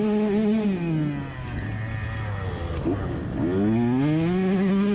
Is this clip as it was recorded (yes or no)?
yes